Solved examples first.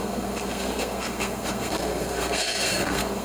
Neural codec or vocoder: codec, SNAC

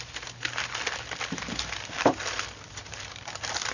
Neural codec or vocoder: none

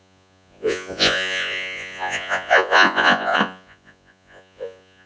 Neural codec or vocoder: vocoder, Vocos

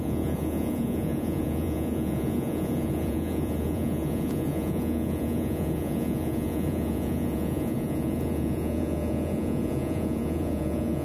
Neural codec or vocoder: vocoder, Vocos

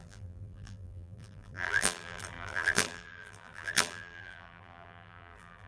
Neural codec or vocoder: vocoder, BigVGAN v2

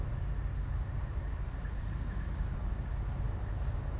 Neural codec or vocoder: none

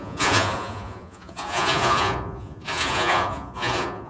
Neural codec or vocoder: vocoder, Vocos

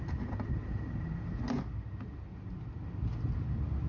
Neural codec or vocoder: none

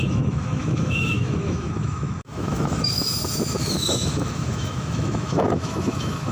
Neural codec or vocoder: autoencoder, DAC-VAE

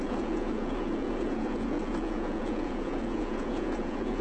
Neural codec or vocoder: vocoder, Vocos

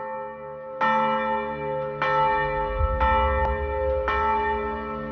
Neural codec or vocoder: none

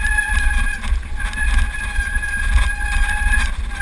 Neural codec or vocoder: none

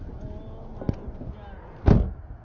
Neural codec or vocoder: none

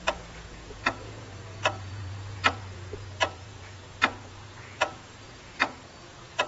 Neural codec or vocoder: vocoder, Vocos